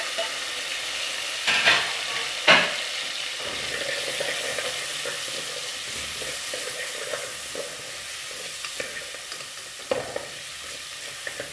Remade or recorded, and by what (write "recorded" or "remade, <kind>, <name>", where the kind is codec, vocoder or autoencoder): recorded